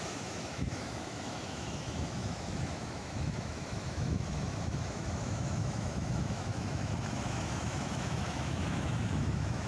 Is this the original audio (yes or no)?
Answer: no